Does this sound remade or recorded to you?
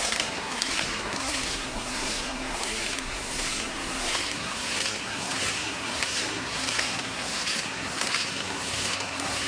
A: remade